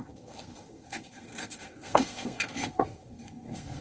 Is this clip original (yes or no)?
no